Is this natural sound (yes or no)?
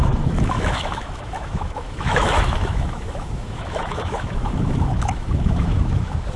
no